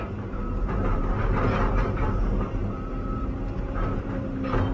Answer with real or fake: fake